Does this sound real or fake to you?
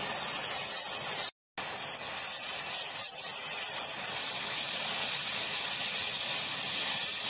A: real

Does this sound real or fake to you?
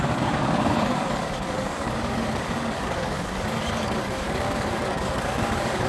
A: fake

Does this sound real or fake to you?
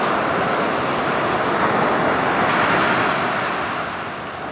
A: real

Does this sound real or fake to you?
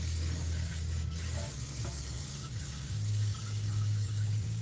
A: fake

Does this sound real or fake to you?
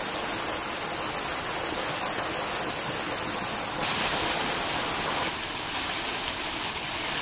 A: real